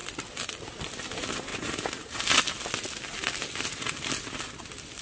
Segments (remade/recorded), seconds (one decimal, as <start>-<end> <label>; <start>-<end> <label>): 0.0-0.7 remade; 0.7-5.0 recorded